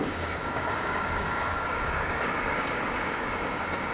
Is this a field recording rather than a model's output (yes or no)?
no